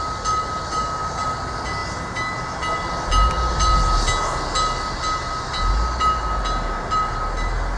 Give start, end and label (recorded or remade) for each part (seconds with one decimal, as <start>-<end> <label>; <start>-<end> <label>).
0.0-7.8 recorded